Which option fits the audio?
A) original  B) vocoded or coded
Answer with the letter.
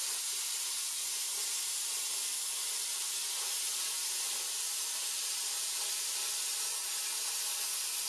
A